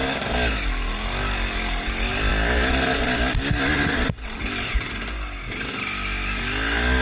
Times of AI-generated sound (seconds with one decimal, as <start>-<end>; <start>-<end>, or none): none